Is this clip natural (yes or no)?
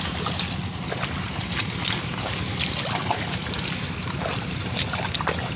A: yes